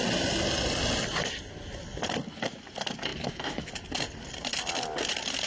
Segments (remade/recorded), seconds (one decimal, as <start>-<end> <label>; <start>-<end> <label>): 0.0-3.1 recorded; 3.1-3.7 remade; 3.7-5.5 recorded